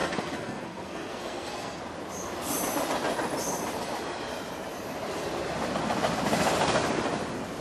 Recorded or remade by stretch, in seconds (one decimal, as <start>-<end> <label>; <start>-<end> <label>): 0.0-1.8 remade; 1.8-7.6 recorded